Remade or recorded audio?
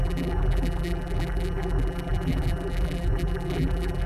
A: remade